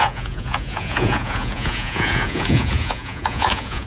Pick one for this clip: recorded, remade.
remade